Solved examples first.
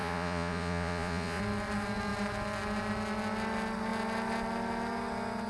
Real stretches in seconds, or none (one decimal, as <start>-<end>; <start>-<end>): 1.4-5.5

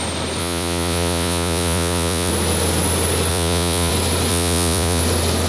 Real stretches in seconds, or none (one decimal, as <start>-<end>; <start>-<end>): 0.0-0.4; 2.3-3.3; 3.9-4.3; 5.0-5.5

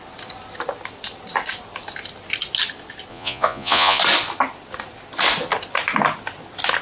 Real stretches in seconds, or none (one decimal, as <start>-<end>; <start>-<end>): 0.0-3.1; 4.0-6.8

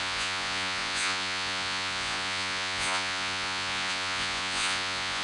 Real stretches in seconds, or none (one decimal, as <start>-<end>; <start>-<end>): none

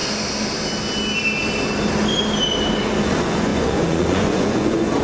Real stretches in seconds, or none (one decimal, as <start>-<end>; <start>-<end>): 0.0-3.0

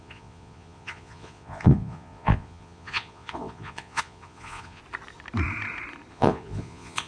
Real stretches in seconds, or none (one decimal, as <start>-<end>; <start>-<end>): 4.8-6.1

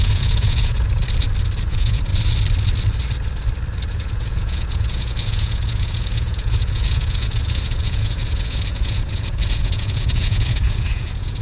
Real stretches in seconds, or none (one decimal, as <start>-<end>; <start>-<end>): 1.0-1.6; 2.1-3.9

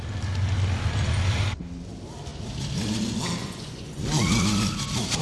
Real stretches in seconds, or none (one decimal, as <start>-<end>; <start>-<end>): 0.0-3.4; 4.0-5.2